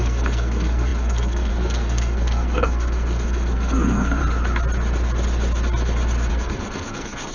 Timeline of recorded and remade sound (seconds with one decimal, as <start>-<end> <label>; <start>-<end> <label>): 0.0-4.2 remade; 4.2-6.3 recorded; 6.3-7.3 remade